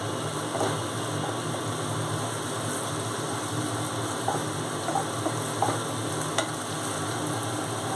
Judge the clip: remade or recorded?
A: recorded